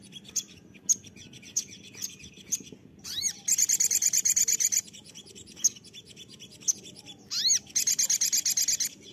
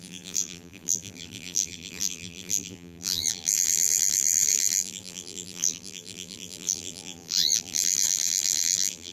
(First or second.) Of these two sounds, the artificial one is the second